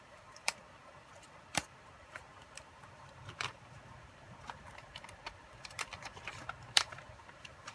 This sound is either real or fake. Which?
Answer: fake